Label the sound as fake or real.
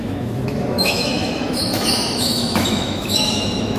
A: fake